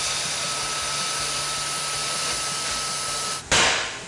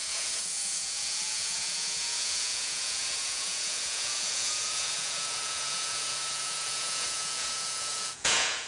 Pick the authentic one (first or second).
first